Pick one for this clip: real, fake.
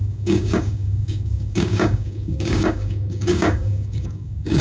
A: fake